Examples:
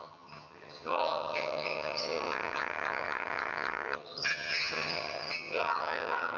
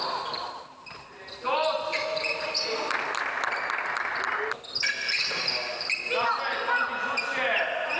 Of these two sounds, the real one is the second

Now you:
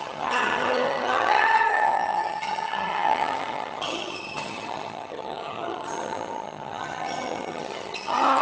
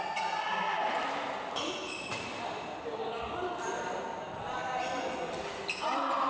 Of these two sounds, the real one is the second